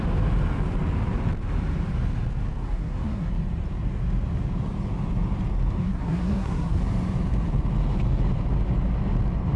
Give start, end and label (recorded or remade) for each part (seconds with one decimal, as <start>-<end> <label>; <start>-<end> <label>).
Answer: 0.0-2.6 recorded; 2.6-3.3 remade; 3.3-5.8 recorded; 5.8-6.8 remade; 6.8-9.6 recorded